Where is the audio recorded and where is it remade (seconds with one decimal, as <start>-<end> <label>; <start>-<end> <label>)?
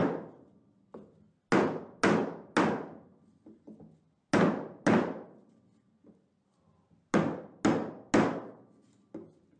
0.0-9.6 recorded